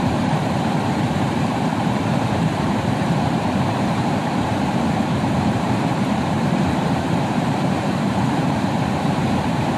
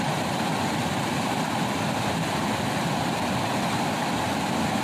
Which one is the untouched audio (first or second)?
second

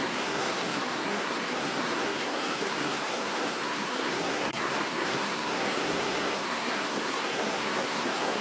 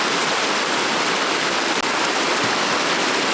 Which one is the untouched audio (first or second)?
second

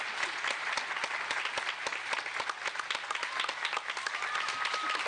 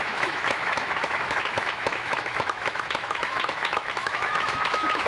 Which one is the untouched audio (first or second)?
first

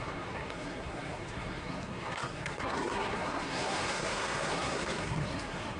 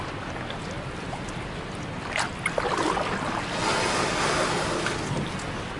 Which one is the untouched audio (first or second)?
second